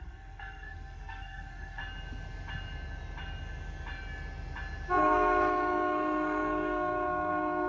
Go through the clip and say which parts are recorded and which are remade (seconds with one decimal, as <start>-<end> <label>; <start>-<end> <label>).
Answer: 0.0-1.8 remade; 1.8-5.0 recorded; 5.0-7.7 remade

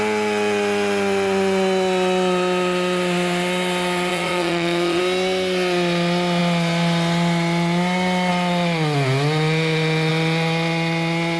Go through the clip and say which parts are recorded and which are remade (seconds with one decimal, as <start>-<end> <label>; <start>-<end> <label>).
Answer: 0.0-4.1 recorded; 4.1-5.0 remade; 5.0-11.4 recorded

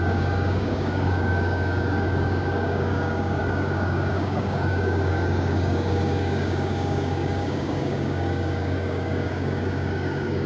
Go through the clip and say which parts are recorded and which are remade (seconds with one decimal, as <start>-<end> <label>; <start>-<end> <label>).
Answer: 0.0-10.5 remade

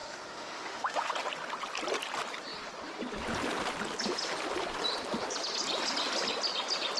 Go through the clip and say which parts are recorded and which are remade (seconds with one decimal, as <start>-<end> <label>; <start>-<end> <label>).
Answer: 0.0-1.1 remade; 1.1-7.0 recorded

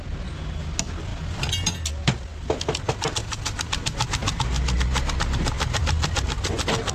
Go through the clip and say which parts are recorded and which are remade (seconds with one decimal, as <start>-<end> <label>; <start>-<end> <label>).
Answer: 0.0-6.9 recorded